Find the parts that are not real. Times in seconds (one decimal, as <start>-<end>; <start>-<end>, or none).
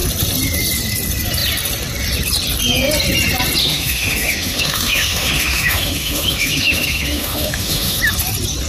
3.6-8.0